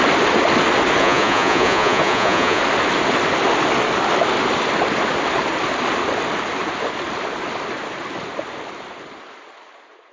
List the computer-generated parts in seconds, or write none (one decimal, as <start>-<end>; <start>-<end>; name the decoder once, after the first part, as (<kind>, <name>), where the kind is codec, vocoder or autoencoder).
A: 1.0-2.6 (vocoder, Vocos)

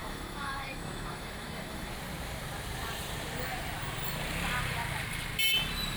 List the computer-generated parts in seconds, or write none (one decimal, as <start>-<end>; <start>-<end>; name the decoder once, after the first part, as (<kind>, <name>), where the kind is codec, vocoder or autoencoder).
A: 0.0-1.9 (autoencoder, DAC-VAE)

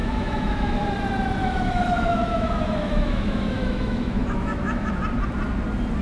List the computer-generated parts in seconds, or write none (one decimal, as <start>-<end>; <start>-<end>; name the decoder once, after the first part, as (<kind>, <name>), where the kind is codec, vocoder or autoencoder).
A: 0.0-0.9 (autoencoder, DAC-VAE); 1.4-5.0

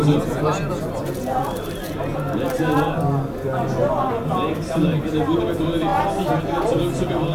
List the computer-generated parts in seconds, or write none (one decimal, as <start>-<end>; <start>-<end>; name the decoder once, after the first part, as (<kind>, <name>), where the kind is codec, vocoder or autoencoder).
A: none

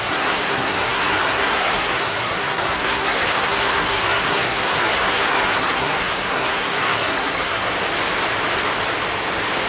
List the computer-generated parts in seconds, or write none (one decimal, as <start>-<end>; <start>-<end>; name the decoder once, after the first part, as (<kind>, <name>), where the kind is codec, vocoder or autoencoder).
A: 0.0-7.7 (codec, SNAC)

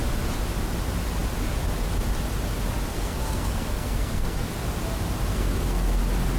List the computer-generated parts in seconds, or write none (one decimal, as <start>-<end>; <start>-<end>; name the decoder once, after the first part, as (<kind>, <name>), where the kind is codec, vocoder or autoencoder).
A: 2.9-4.5 (codec, SNAC); 5.3-6.0

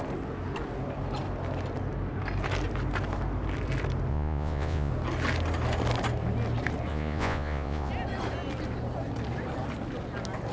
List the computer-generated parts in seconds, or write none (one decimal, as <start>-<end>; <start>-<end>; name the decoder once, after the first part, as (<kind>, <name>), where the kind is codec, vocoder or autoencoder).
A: 4.1-4.9 (vocoder, Vocos); 6.9-7.9

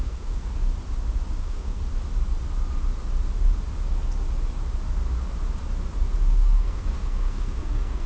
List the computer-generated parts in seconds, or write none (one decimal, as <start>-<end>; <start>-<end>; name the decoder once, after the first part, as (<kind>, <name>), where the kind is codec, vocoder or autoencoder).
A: 0.0-0.5 (codec, SNAC); 1.4-1.8; 6.3-8.1